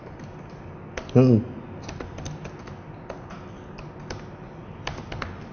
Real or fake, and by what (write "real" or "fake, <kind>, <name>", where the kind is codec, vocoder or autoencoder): real